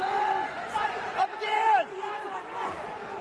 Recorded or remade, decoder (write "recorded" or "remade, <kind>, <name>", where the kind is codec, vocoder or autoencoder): remade, vocoder, Vocos